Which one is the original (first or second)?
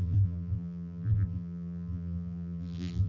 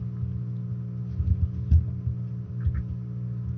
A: second